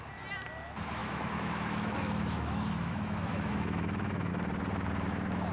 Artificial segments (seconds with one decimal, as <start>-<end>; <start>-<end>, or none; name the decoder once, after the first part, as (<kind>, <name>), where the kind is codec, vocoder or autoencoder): 1.0-4.3 (autoencoder, DAC-VAE)